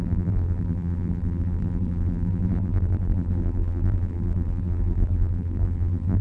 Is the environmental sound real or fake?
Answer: fake